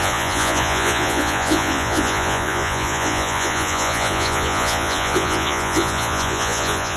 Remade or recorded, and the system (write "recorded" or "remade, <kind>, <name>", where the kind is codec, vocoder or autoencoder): remade, vocoder, Vocos